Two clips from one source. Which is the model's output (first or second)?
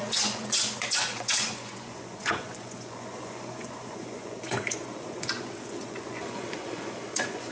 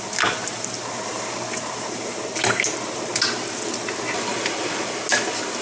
first